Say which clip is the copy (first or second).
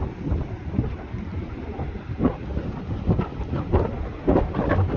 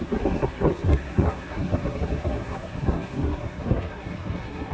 second